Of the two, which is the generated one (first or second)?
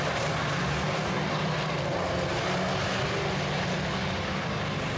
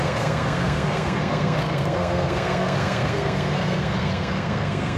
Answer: second